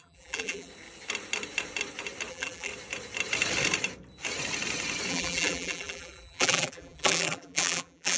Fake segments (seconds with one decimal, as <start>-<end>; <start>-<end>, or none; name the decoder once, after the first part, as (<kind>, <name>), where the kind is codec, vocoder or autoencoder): 0.0-0.7 (vocoder, BigVGAN v2); 2.3-2.7; 5.1-8.2